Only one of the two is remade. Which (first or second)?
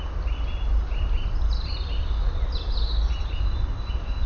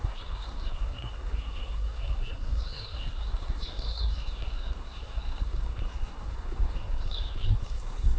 second